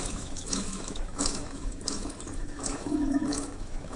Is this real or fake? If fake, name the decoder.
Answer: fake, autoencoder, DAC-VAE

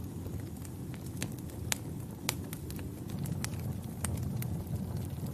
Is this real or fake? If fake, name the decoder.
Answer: real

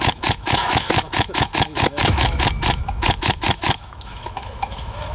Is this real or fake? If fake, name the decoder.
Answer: fake, autoencoder, DAC-VAE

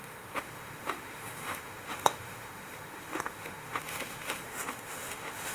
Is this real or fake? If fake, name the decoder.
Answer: fake, autoencoder, DAC-VAE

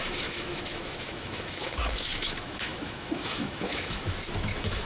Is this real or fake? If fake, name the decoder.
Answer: fake, autoencoder, DAC-VAE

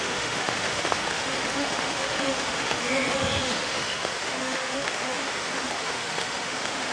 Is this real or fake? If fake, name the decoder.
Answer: fake, autoencoder, DAC-VAE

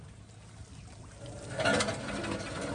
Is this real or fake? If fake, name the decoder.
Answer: real